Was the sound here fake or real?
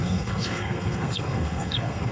fake